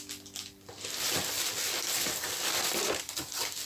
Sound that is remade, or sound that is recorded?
recorded